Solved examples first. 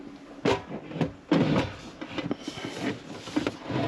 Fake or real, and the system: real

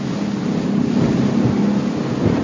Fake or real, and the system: real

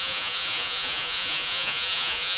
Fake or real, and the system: fake, vocoder, Vocos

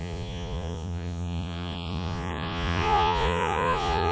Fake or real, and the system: fake, vocoder, Vocos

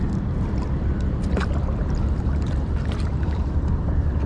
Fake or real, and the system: real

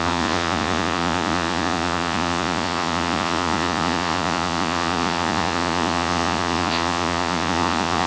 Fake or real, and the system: fake, vocoder, Vocos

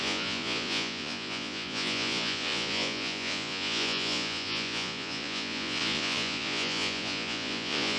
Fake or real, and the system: fake, vocoder, Vocos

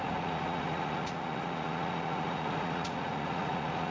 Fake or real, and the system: fake, vocoder, Vocos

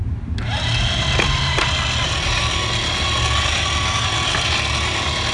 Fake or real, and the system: real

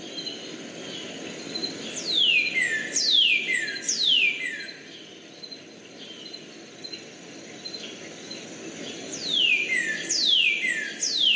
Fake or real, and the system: real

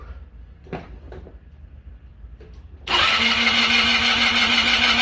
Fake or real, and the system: real